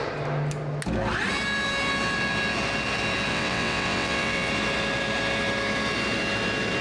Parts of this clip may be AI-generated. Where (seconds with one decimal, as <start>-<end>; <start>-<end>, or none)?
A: 3.3-4.5